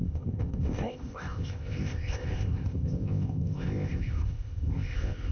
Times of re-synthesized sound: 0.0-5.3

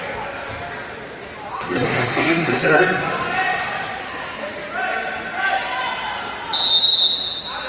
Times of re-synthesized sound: 1.5-2.8

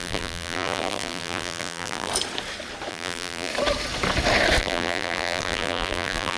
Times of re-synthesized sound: 0.0-2.1; 2.9-3.5; 4.6-6.4

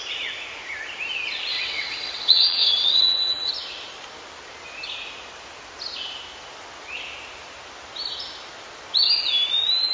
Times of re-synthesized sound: 1.5-3.5

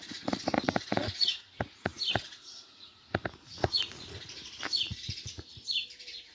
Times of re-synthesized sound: 0.0-5.5

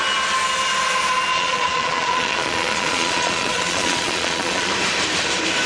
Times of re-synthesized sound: 1.3-4.7

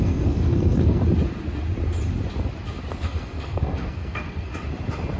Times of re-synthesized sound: 0.0-1.0; 2.9-4.5